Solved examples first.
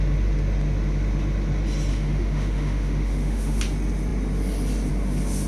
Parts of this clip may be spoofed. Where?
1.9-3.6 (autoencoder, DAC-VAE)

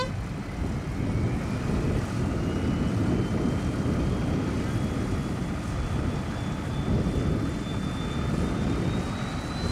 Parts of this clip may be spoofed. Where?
none

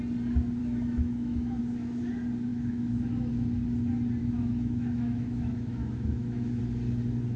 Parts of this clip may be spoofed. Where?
0.6-1.6 (autoencoder, DAC-VAE); 2.5-3.3; 4.2-6.6

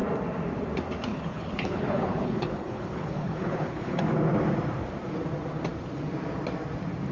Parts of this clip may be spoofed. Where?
1.1-4.0 (codec, HILCodec)

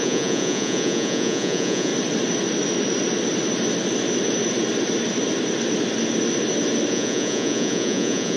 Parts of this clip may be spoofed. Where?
0.0-1.9 (vocoder, Vocos); 6.9-8.4

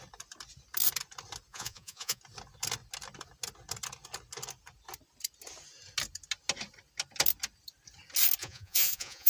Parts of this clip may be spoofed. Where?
1.5-2.2 (vocoder, Vocos); 8.4-9.3

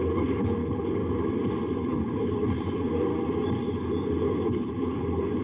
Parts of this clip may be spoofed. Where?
0.0-1.0 (codec, HILCodec); 1.7-3.1; 3.7-5.4